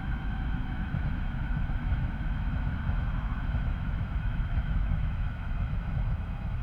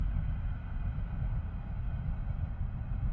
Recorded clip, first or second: second